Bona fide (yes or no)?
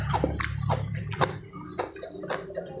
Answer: yes